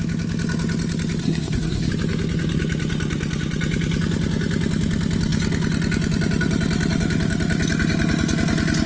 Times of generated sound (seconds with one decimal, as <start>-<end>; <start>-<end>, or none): 1.2-1.9